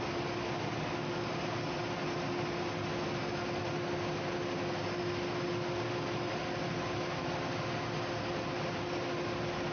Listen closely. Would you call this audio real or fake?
real